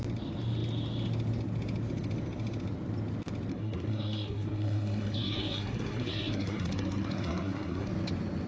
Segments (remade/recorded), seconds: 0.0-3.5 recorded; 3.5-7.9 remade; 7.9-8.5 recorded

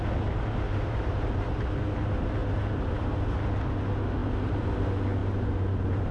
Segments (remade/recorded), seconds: 0.0-0.7 recorded; 0.7-1.5 remade; 1.5-2.4 recorded; 2.4-3.0 remade; 3.0-5.2 recorded; 5.2-6.1 remade